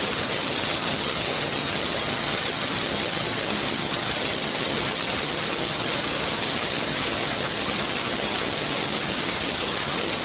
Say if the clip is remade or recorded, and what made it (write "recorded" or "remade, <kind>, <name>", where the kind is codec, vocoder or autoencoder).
remade, vocoder, HiFi-GAN